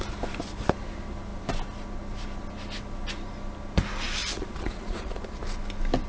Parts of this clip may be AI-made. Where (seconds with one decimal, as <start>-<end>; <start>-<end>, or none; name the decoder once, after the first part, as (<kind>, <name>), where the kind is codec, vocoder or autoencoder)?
4.2-5.4 (vocoder, Vocos)